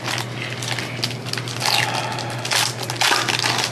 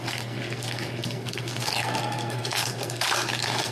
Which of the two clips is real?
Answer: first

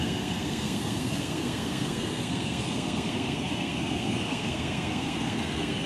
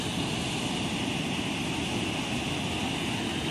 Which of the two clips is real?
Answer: second